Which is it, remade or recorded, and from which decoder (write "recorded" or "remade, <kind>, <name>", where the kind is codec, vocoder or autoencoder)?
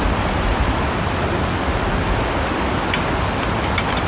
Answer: recorded